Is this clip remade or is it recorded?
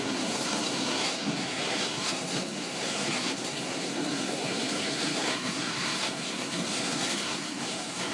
remade